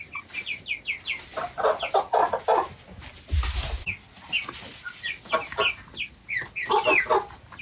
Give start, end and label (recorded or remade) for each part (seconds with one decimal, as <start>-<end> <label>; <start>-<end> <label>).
0.0-7.6 recorded